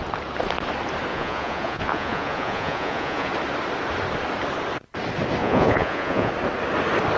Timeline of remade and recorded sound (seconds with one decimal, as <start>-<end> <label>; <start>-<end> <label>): 0.0-1.1 recorded; 1.1-3.3 remade; 3.3-5.4 recorded; 5.4-6.3 remade; 6.3-7.2 recorded